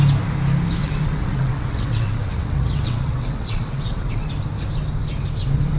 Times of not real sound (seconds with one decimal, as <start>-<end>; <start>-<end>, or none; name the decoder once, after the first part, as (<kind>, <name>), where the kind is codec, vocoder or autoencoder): 0.8-4.3 (vocoder, WaveNeXt)